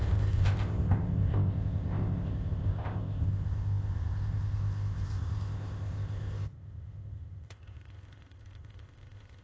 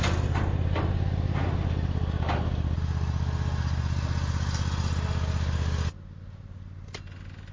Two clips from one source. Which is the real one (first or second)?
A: second